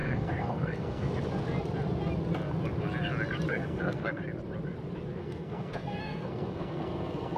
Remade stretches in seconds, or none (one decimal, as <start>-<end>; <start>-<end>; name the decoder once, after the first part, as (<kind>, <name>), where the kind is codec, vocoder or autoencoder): 0.0-1.1 (codec, SNAC); 3.5-4.2; 5.2-7.4